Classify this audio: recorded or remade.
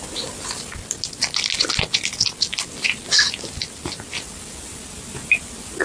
recorded